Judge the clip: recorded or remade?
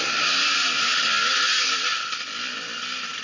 recorded